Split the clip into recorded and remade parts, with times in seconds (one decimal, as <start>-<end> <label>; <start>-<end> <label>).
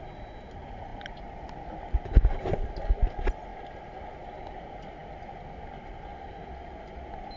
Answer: 0.0-7.4 recorded